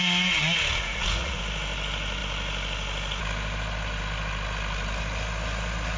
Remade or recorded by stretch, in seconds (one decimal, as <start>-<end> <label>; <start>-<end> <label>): 0.0-0.7 recorded; 0.7-1.4 remade; 1.4-6.0 recorded